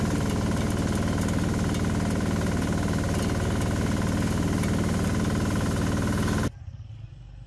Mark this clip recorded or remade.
recorded